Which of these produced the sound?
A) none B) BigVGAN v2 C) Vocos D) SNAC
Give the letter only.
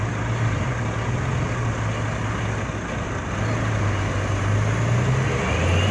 A